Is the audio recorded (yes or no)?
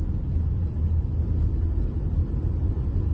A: yes